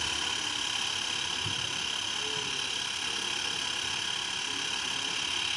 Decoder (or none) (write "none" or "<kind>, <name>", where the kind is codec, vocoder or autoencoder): none